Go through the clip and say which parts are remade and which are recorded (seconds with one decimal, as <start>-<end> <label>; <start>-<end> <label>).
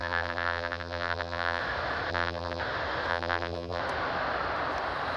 0.0-1.6 remade; 1.6-2.1 recorded; 2.1-2.6 remade; 2.6-3.1 recorded; 3.1-3.8 remade; 3.8-5.2 recorded